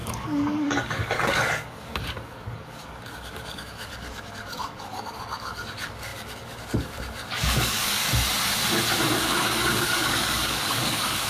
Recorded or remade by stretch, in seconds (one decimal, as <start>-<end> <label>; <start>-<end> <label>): 0.0-8.0 remade; 8.0-9.2 recorded; 9.2-11.3 remade